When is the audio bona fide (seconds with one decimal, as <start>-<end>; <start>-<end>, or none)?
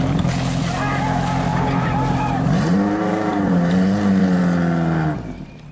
0.0-1.5; 4.4-5.7